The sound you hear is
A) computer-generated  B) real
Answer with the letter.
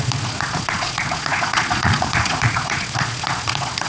A